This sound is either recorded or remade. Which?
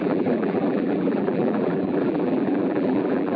remade